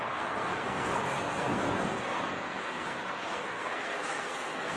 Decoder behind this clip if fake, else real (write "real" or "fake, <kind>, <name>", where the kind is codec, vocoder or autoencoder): fake, codec, SNAC